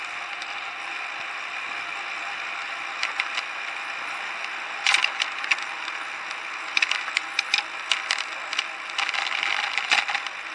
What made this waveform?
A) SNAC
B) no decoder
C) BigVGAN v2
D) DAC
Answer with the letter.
B